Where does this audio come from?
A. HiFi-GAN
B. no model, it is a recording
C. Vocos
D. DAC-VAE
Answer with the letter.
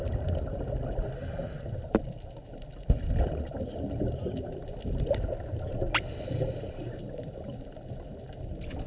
B